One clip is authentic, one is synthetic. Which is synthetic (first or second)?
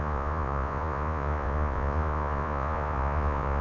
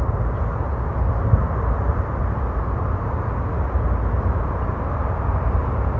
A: first